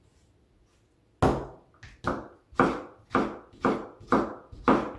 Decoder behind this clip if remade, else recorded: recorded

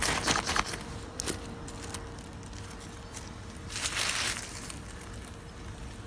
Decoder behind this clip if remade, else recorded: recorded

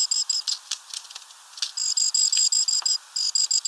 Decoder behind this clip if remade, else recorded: recorded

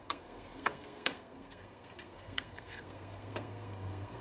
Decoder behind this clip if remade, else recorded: remade, codec, SNAC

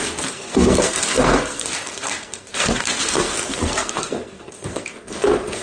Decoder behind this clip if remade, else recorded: remade, codec, SNAC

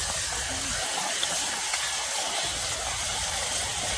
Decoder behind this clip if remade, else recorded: recorded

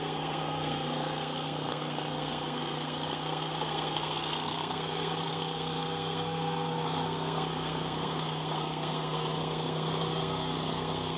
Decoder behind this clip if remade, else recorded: remade, codec, SNAC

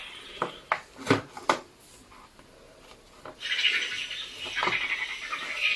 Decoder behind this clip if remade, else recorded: recorded